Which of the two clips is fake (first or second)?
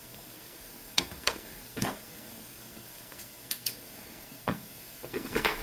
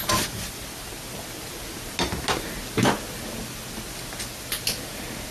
first